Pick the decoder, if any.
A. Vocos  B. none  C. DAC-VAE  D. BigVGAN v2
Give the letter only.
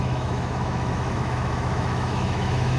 C